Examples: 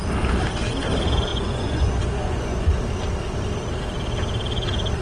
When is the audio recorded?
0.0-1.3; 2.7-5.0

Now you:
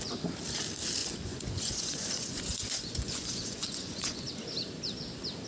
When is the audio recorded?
0.0-1.0; 4.3-5.5

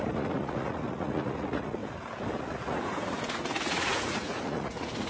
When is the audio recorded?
1.8-2.4

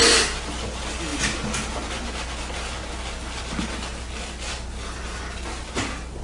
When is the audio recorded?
0.0-6.2